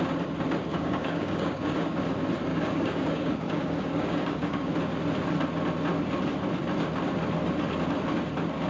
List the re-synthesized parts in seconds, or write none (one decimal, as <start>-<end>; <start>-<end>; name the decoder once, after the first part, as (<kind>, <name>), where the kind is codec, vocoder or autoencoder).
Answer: 0.7-2.0 (codec, DAC); 2.5-4.7